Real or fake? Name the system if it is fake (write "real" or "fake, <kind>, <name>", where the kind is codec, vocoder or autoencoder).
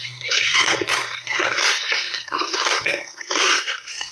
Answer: fake, codec, SNAC